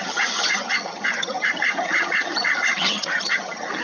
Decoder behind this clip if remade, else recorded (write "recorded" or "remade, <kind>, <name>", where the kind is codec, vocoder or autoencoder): remade, vocoder, HiFi-GAN